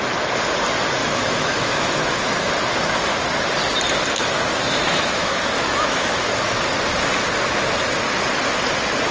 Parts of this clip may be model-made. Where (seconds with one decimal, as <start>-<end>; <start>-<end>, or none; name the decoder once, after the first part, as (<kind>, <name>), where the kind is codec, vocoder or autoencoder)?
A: 1.0-2.5 (autoencoder, DAC-VAE); 4.2-6.5